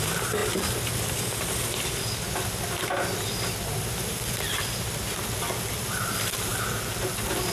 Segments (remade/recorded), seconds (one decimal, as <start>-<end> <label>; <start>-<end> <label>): 0.0-7.5 recorded